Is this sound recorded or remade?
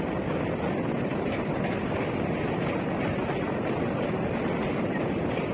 recorded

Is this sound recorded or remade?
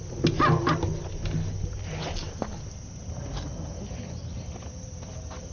recorded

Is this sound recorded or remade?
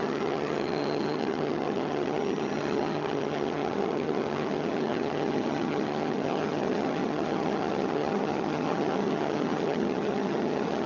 remade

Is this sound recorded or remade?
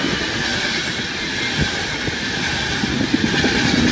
recorded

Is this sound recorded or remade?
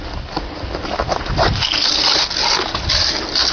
recorded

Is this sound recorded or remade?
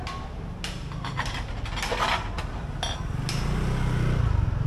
recorded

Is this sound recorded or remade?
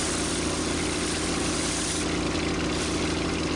recorded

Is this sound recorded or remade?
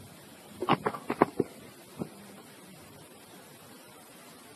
remade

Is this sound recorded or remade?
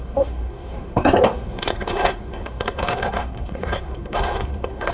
remade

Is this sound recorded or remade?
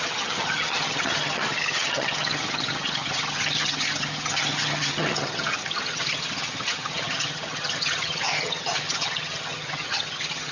remade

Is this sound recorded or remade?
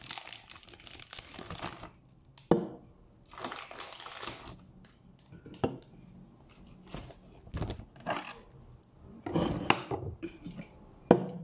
recorded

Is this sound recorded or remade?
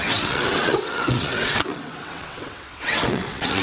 remade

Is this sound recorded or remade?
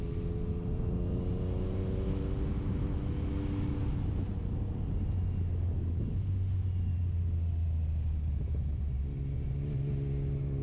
recorded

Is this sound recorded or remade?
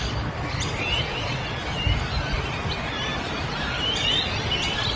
recorded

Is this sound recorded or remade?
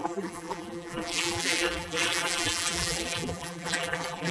remade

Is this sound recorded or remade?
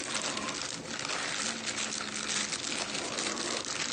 recorded